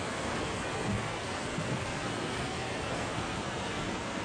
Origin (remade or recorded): remade